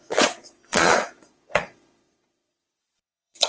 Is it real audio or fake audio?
fake